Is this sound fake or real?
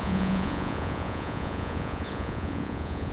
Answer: fake